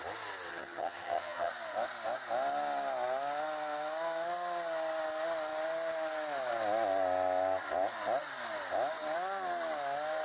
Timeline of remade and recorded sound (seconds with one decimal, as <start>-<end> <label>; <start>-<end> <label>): 0.0-0.5 recorded; 0.5-1.5 remade; 1.5-10.2 recorded